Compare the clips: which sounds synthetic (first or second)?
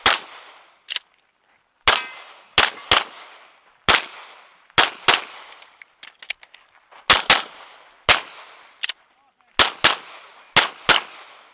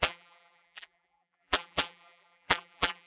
second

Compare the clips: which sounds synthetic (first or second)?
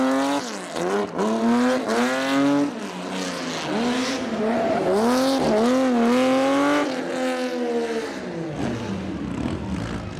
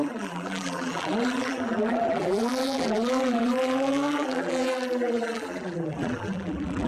second